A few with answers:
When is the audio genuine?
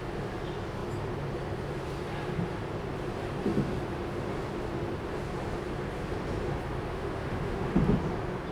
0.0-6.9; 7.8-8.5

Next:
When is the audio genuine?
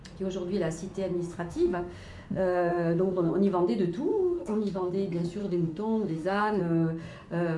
0.0-1.3; 3.3-4.1; 4.9-5.4; 6.6-7.6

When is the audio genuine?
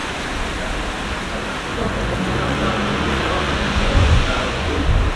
0.5-1.7; 4.8-5.2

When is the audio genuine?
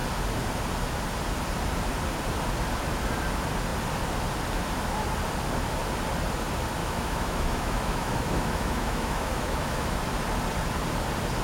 0.0-6.8; 10.0-11.4